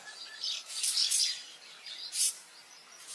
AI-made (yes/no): yes